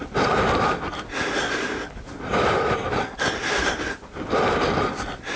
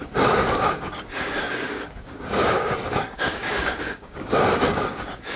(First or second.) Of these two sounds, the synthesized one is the second